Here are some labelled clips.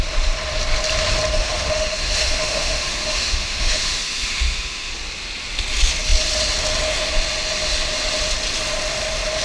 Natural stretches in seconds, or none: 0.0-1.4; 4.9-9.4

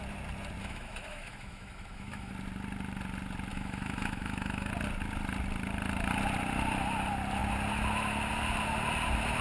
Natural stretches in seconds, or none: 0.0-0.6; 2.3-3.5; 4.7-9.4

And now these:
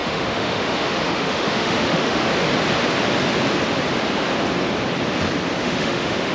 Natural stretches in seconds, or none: 2.3-5.6

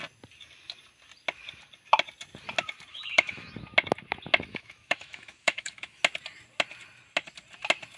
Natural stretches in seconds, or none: 0.0-2.9; 3.5-4.5; 6.0-8.0